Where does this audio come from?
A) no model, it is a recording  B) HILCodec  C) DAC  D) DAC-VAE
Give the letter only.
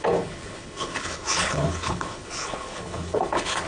B